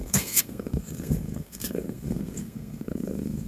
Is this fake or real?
fake